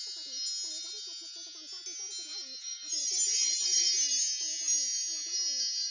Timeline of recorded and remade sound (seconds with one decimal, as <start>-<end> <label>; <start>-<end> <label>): 0.0-2.3 recorded; 2.3-4.2 remade; 4.2-5.9 recorded